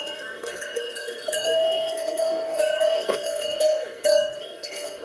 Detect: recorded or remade remade